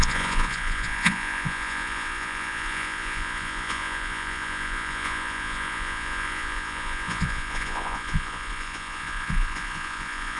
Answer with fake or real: fake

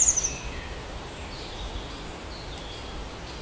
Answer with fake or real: real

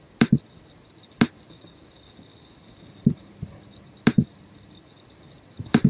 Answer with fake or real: real